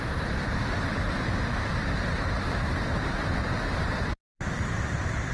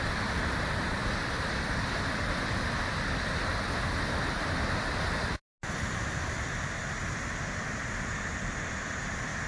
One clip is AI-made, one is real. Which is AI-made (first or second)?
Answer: first